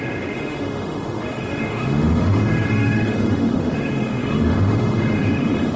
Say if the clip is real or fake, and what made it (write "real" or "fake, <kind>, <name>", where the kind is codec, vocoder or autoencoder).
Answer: fake, autoencoder, DAC-VAE